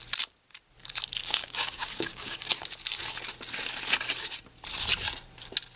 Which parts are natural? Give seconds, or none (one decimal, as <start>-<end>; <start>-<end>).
0.0-1.2; 2.4-5.8